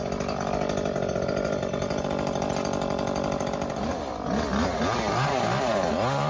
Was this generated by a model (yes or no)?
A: no